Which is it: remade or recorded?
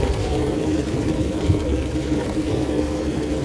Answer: remade